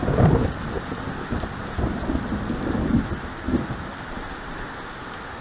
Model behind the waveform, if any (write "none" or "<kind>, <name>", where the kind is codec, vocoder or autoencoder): none